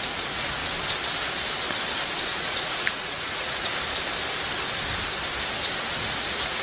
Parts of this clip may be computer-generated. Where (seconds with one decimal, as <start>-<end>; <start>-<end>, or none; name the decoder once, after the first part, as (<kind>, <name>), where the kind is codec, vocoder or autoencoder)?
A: 0.0-0.6 (vocoder, Vocos); 2.4-3.7; 5.8-6.6